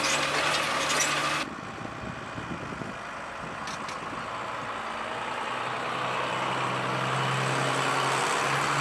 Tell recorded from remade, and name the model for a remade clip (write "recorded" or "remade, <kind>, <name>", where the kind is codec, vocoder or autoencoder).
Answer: recorded